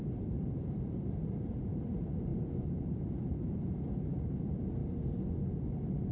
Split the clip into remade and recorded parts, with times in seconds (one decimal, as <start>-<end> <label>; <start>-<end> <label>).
0.0-4.8 remade; 4.8-6.1 recorded

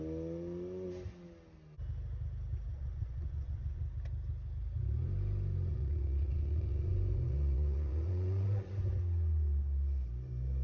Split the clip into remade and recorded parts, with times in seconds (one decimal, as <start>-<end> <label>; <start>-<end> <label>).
0.0-2.7 recorded; 2.7-3.8 remade; 3.8-5.7 recorded; 5.7-8.7 remade; 8.7-10.6 recorded

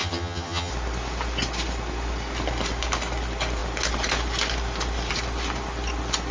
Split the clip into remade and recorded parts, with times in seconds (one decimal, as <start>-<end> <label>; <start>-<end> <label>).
0.0-0.7 remade; 0.7-6.3 recorded

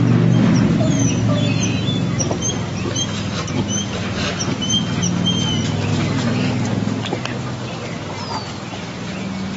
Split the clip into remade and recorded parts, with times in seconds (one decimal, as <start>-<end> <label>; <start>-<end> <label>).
0.0-9.6 recorded

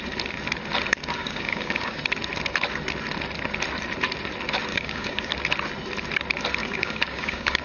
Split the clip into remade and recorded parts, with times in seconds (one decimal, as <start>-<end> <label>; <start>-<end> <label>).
0.0-1.2 recorded; 1.2-2.0 remade; 2.0-4.7 recorded; 4.7-5.3 remade; 5.3-6.6 recorded; 6.6-7.6 remade